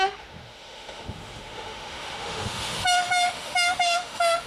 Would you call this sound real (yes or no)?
no